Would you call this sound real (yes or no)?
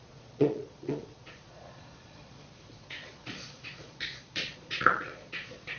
no